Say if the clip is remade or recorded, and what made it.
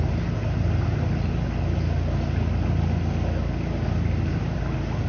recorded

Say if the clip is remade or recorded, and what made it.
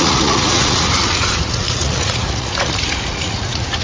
remade, vocoder, Vocos